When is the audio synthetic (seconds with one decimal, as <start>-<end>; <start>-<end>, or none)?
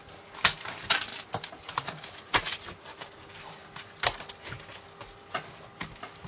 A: 1.1-3.1